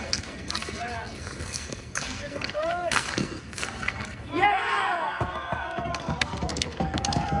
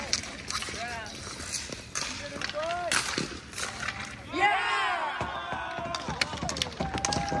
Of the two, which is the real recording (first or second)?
second